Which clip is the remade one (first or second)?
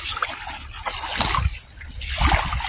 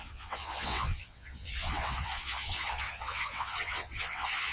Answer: second